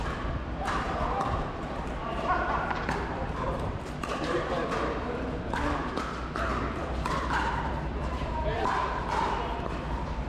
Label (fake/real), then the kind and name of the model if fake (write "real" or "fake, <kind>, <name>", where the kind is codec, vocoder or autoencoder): fake, vocoder, BigVGAN v2